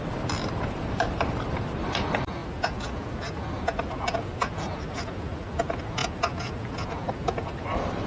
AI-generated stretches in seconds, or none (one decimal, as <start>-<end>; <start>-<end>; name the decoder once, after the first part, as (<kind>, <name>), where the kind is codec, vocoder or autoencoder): 0.0-2.4 (vocoder, BigVGAN v2); 3.9-6.0; 7.1-8.1